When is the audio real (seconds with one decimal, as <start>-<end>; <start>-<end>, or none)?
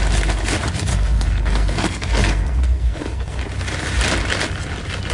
0.0-0.9; 3.4-5.1